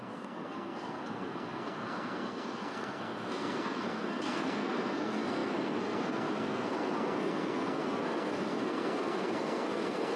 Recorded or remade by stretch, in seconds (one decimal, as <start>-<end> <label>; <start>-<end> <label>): 0.0-10.2 remade